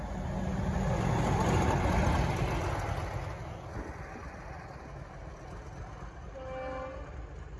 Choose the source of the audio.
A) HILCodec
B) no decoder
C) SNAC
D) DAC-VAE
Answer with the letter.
B